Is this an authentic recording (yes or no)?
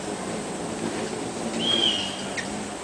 yes